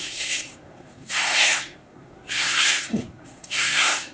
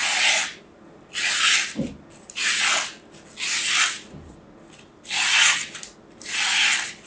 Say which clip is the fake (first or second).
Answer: first